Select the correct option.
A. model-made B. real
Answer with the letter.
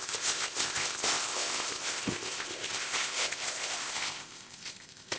A